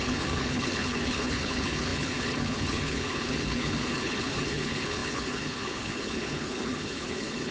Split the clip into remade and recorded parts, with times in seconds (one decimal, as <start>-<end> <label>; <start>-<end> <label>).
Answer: 0.0-7.5 remade